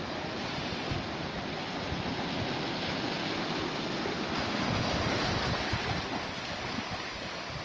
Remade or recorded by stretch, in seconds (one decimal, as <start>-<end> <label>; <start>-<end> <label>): 0.0-1.6 remade; 1.6-6.2 recorded; 6.2-7.6 remade